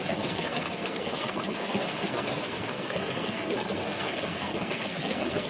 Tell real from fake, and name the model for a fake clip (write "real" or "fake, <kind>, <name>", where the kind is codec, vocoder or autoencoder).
fake, codec, SNAC